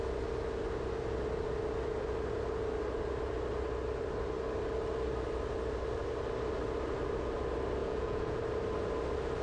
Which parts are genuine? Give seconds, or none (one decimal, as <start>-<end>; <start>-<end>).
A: 0.0-7.8; 8.4-9.4